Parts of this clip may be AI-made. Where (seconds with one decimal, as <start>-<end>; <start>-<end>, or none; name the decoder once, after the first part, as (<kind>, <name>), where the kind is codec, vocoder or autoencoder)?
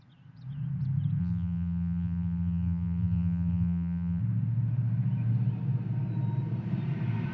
1.2-4.2 (vocoder, BigVGAN v2)